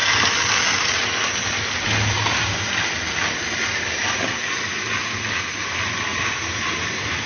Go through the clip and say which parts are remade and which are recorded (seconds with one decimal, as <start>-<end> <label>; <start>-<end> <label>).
0.0-7.3 recorded